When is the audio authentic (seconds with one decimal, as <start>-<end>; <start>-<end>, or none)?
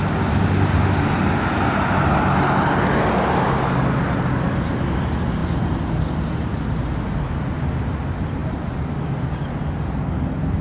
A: 0.0-10.6